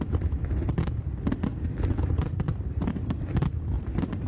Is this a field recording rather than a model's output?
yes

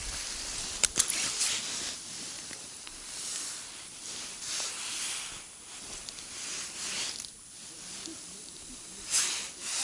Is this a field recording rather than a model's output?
no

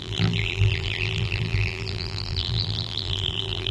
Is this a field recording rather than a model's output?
no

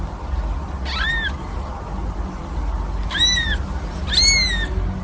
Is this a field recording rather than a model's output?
yes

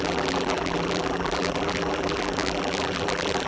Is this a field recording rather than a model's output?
no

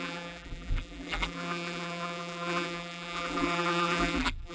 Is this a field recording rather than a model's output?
no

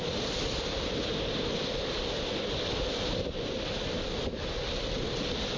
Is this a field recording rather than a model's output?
yes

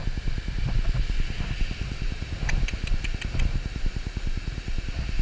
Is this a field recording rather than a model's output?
yes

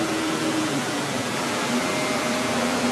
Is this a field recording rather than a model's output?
no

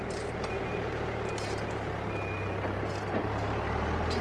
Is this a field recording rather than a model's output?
no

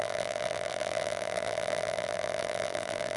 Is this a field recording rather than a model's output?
no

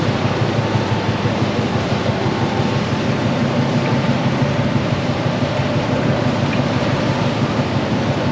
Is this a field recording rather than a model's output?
no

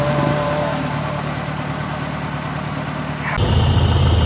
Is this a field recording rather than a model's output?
yes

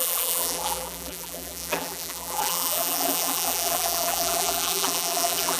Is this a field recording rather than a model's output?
no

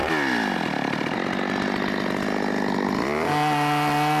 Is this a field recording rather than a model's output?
yes